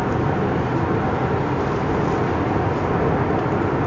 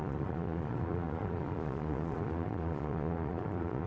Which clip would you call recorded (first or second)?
first